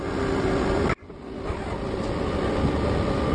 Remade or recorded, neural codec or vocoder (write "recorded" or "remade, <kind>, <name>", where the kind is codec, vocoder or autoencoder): recorded